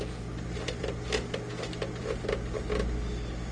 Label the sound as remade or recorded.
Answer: recorded